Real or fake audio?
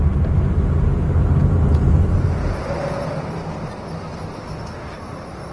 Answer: real